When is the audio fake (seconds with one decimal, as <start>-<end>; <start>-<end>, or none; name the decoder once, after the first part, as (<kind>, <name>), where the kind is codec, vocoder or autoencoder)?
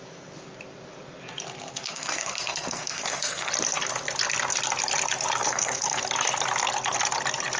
1.7-3.5 (codec, SNAC); 5.4-6.0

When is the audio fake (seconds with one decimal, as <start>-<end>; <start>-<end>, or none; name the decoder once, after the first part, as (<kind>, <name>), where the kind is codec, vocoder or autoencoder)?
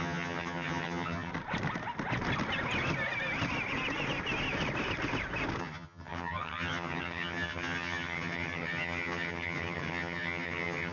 0.0-1.3 (vocoder, HiFi-GAN); 5.6-10.9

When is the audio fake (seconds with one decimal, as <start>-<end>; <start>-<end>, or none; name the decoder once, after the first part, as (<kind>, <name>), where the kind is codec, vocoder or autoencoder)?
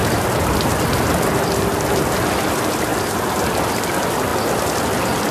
0.0-2.9 (vocoder, BigVGAN v2); 3.8-4.3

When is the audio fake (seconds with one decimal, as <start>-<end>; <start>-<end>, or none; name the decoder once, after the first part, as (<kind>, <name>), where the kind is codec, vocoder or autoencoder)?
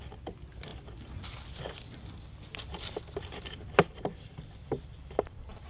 none